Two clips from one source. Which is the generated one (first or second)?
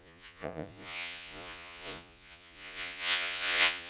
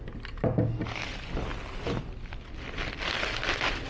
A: first